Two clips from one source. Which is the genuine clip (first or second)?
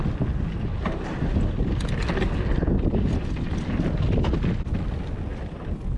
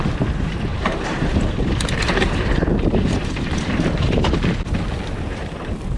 first